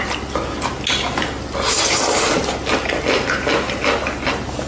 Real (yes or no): yes